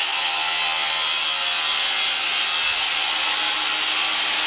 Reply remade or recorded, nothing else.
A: recorded